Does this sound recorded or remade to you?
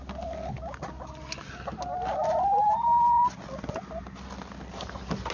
recorded